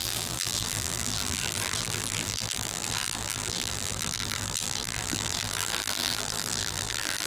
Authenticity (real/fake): fake